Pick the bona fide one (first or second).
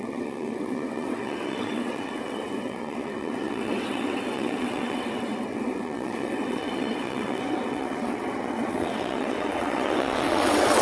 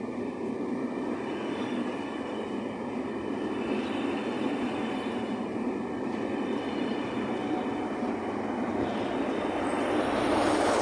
second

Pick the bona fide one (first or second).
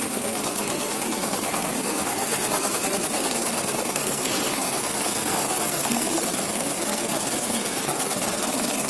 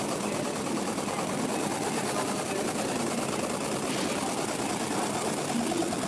second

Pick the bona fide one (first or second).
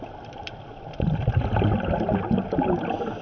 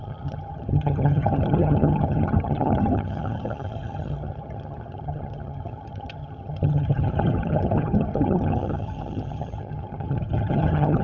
first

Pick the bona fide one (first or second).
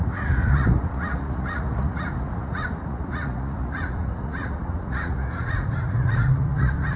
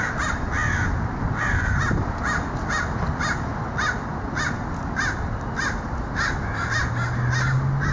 second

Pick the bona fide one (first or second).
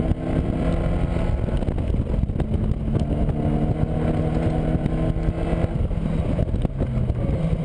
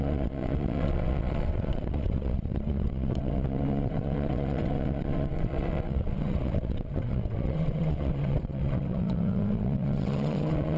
first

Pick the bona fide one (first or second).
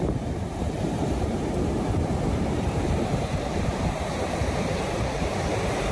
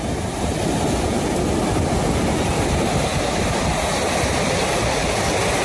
second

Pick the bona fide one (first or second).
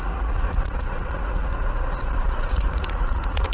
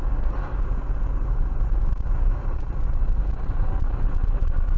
second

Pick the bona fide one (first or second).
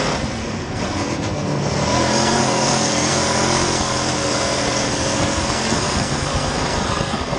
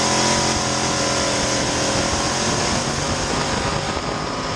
second